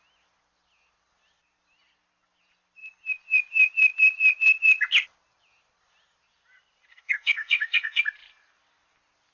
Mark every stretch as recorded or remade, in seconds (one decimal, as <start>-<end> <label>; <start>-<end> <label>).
0.0-6.9 recorded; 6.9-8.0 remade; 8.0-9.3 recorded

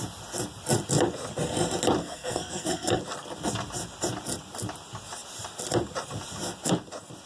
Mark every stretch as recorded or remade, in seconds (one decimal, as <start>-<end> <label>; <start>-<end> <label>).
0.0-2.0 recorded; 2.0-3.0 remade; 3.0-7.3 recorded

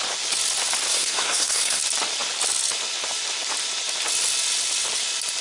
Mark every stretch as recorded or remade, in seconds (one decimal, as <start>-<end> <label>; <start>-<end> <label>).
0.0-0.9 recorded; 0.9-1.8 remade; 1.8-5.4 recorded

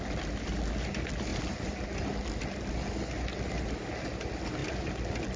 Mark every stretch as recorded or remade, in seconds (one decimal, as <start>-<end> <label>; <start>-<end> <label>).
0.0-5.4 recorded

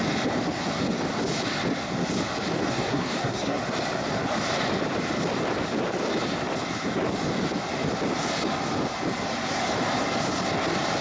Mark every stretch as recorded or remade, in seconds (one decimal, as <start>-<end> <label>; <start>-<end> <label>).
0.0-2.7 recorded; 2.7-3.6 remade; 3.6-11.0 recorded

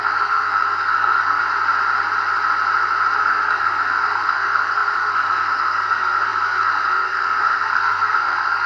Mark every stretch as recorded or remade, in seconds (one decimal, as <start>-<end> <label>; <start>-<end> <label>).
0.0-1.4 remade; 1.4-3.2 recorded; 3.2-8.7 remade